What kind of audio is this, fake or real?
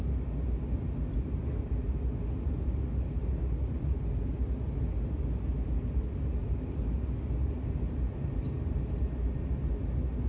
real